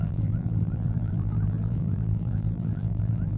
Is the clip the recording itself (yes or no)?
no